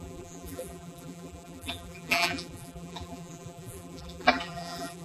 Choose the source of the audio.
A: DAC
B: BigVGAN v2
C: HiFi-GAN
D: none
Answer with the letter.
B